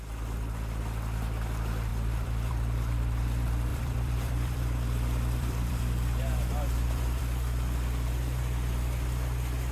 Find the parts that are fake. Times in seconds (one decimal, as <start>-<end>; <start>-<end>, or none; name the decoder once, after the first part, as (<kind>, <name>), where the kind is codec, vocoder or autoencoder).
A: 1.9-2.5 (vocoder, BigVGAN v2); 3.7-7.2